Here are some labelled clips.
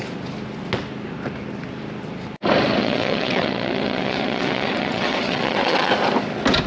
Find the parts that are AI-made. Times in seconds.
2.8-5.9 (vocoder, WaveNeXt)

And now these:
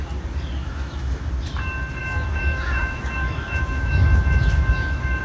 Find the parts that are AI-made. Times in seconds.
0.6-1.3 (autoencoder, DAC-VAE); 2.0-5.2

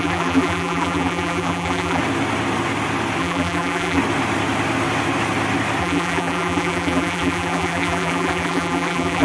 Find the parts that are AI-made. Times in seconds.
0.0-2.0 (vocoder, BigVGAN v2); 3.2-4.0; 5.8-9.2

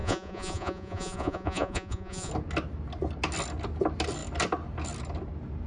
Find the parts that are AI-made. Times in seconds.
0.0-2.3 (vocoder, Vocos)